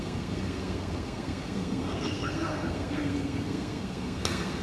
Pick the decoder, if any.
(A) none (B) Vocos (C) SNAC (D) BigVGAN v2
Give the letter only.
C